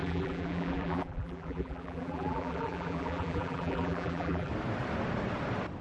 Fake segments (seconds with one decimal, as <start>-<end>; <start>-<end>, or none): 0.0-4.5